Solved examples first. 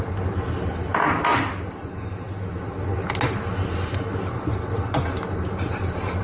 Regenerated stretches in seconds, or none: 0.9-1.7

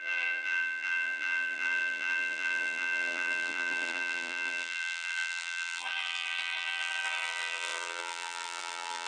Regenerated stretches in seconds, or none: 0.0-9.1